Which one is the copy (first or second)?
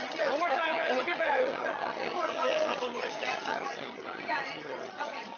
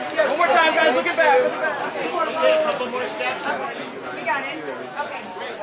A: first